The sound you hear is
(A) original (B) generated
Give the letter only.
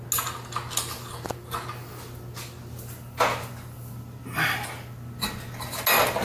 A